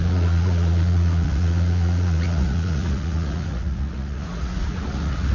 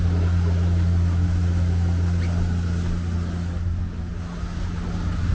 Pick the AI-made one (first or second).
first